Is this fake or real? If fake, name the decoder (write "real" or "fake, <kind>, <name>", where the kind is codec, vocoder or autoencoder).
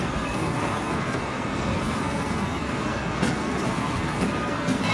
fake, codec, SNAC